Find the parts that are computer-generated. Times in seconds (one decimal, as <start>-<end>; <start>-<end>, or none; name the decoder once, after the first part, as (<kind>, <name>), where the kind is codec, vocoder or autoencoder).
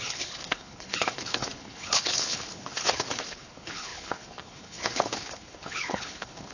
0.0-6.5 (codec, HILCodec)